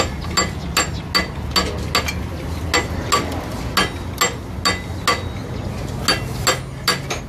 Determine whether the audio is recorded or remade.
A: recorded